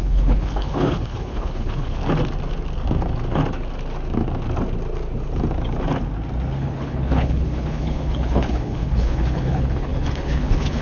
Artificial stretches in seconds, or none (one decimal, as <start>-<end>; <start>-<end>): 0.0-2.0; 6.5-10.8